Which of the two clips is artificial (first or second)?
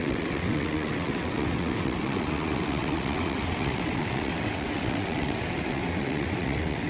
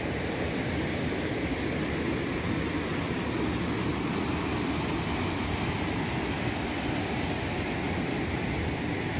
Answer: first